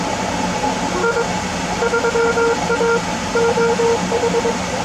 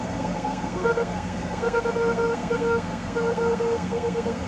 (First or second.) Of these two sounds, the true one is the first